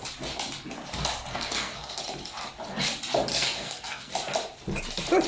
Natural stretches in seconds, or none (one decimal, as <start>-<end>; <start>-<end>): 0.0-1.3; 2.0-3.3; 4.1-5.3